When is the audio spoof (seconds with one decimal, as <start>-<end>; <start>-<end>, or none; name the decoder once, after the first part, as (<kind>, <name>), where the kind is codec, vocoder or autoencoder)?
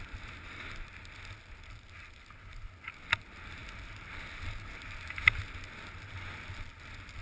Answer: none